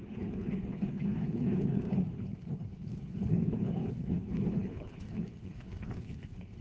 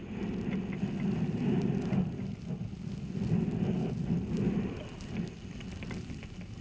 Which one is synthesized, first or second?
first